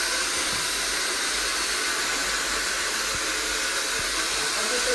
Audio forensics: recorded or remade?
recorded